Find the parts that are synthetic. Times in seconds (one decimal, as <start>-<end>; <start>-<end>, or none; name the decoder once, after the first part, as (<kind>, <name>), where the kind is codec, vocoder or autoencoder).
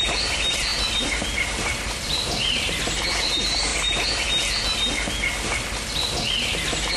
0.0-3.7 (vocoder, BigVGAN v2)